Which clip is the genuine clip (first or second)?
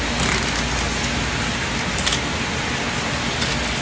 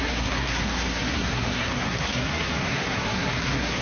first